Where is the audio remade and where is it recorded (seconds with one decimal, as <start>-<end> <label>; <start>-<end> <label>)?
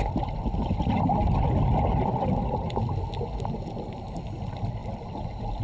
0.0-5.6 recorded